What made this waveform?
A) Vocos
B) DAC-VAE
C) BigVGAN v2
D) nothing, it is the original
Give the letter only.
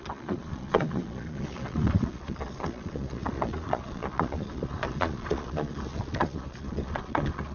A